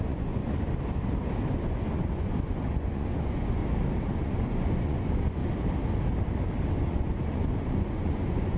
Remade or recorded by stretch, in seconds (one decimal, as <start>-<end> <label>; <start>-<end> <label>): 0.0-0.4 remade; 0.4-1.5 recorded; 1.5-3.6 remade; 3.6-4.1 recorded; 4.1-5.4 remade; 5.4-6.7 recorded; 6.7-8.6 remade